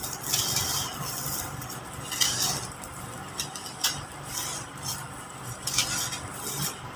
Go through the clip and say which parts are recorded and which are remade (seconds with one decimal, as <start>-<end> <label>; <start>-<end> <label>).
0.0-7.0 recorded